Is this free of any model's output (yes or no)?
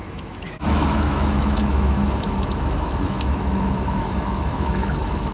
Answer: no